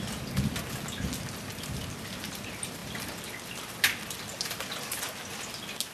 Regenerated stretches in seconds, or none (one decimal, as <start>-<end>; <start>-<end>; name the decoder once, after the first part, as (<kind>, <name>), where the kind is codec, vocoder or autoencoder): none